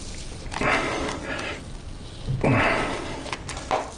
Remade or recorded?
recorded